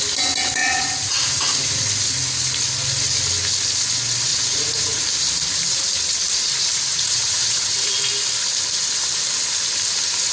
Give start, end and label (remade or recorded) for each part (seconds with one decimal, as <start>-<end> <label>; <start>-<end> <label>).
0.0-0.6 recorded; 0.6-1.4 remade; 1.4-4.3 recorded; 4.3-5.0 remade; 5.0-6.9 recorded; 6.9-8.0 remade; 8.0-10.3 recorded